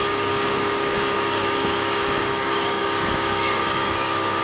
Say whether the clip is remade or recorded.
remade